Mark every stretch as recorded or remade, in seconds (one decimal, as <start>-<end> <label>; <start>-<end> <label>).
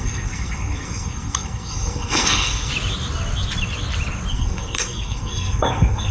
0.0-2.7 remade; 2.7-4.3 recorded; 4.3-6.1 remade